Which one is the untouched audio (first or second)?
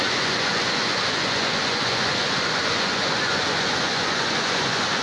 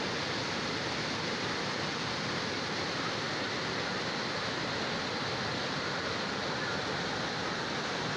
second